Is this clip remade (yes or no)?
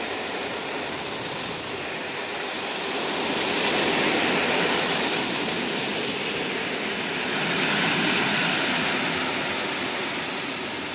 no